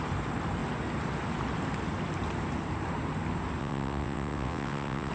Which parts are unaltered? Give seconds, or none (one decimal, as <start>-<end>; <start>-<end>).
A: 0.0-3.6